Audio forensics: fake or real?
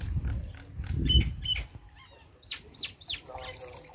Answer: real